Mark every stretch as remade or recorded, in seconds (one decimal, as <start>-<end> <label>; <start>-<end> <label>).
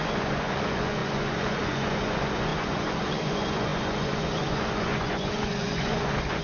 0.0-6.4 remade